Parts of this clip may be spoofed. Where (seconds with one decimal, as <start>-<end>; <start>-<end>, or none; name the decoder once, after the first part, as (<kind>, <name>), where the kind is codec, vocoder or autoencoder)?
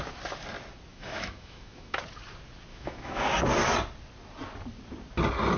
0.9-2.0 (autoencoder, DAC-VAE); 2.7-3.2